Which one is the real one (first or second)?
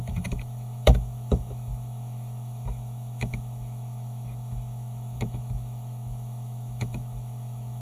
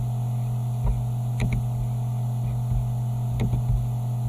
second